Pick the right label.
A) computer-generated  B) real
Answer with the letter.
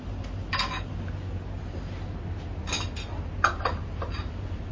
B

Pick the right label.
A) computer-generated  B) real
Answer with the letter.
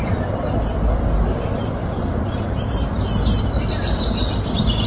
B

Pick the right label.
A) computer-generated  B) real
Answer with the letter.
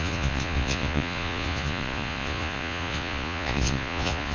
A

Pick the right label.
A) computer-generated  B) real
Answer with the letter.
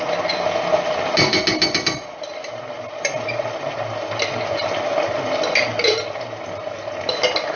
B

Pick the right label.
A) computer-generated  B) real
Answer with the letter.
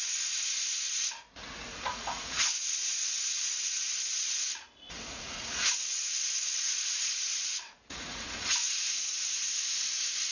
A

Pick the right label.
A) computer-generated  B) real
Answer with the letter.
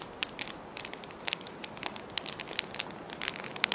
B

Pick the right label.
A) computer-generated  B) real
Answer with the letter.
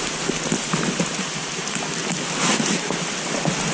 B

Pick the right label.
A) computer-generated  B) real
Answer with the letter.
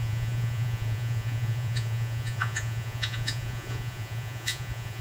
A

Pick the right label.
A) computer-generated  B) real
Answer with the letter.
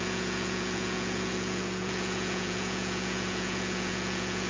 A